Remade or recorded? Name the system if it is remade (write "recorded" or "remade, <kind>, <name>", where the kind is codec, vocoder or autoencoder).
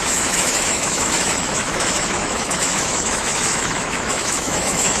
remade, autoencoder, DAC-VAE